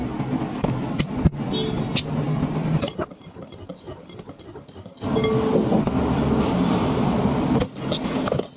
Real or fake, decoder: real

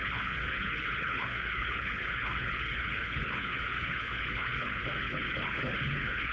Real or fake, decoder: fake, codec, HILCodec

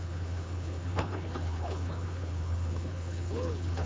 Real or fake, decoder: fake, codec, HILCodec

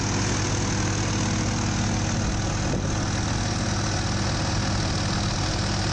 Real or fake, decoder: real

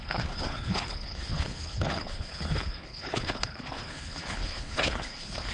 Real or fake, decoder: fake, codec, HILCodec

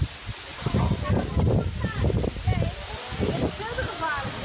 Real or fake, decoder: real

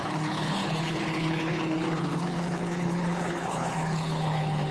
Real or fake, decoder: fake, codec, HILCodec